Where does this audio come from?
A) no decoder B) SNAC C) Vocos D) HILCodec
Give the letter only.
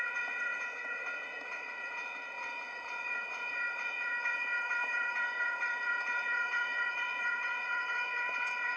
C